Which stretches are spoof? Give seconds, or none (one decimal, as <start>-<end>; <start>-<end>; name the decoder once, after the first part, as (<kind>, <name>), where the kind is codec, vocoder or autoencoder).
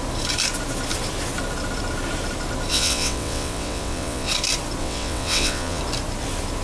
2.7-4.3 (vocoder, WaveNeXt); 4.8-5.8